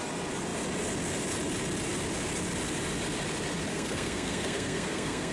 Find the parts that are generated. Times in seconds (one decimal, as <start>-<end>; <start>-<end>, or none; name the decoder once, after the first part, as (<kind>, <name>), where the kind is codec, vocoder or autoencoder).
3.7-5.3 (codec, SNAC)